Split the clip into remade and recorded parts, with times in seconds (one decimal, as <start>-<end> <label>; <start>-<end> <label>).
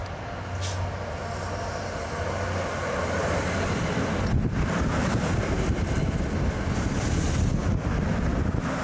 0.0-8.8 recorded